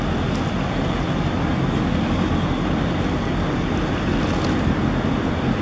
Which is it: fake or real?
real